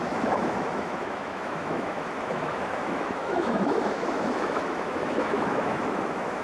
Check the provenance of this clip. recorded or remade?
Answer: remade